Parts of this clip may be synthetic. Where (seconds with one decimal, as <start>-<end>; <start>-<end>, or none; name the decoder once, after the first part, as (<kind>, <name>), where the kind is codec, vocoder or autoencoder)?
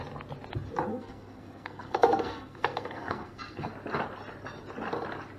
0.9-3.7 (codec, SNAC)